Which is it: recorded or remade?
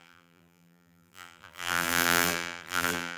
remade